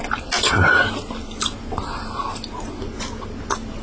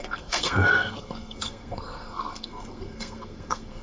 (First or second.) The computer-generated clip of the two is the second